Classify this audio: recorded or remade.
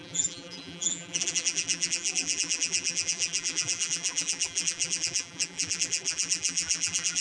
remade